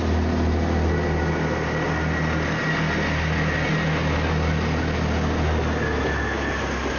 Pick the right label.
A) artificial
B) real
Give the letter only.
B